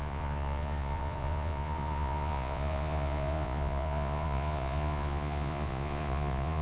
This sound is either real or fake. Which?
fake